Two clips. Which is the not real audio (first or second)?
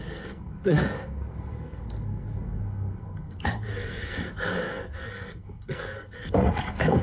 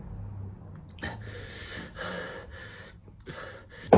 first